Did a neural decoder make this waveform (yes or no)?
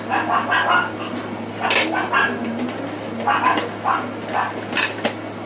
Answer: no